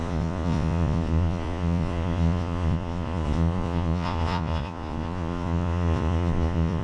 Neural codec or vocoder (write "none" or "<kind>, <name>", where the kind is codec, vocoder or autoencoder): vocoder, Vocos